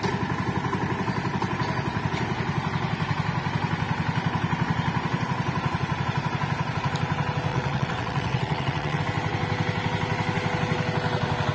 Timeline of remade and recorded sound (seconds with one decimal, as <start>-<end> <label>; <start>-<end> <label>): 0.0-7.5 recorded; 7.5-9.0 remade; 9.0-11.5 recorded